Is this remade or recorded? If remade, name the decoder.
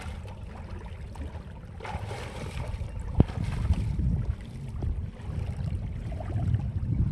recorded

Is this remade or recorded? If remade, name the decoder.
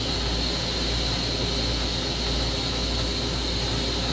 recorded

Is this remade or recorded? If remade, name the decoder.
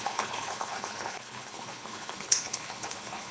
remade, codec, HILCodec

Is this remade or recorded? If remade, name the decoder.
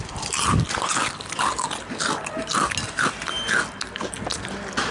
recorded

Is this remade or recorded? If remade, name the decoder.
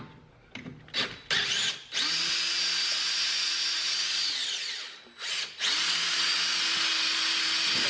recorded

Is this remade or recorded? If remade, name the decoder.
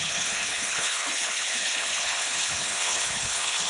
remade, codec, HILCodec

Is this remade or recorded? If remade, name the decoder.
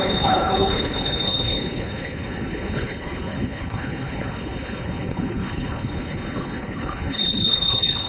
remade, codec, HILCodec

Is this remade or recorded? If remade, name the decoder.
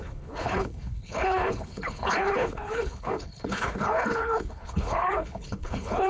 remade, codec, HILCodec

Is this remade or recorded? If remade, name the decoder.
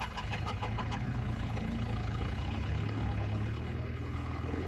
remade, codec, HILCodec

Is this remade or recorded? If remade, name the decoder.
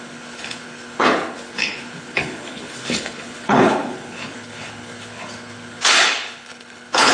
remade, codec, HILCodec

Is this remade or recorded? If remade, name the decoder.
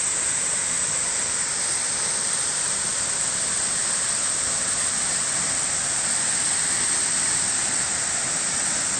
recorded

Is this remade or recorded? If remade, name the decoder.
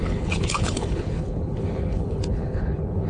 remade, codec, HILCodec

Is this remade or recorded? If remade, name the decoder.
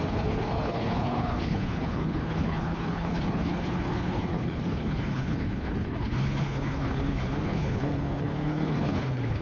remade, codec, HILCodec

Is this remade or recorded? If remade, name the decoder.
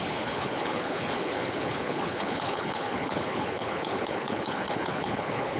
remade, codec, HILCodec